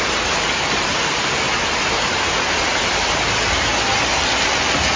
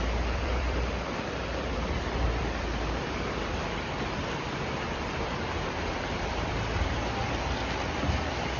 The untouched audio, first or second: first